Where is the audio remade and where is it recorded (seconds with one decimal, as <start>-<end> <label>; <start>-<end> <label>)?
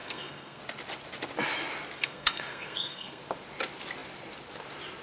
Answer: 0.0-0.6 remade; 0.6-2.0 recorded; 2.0-3.2 remade; 3.2-5.0 recorded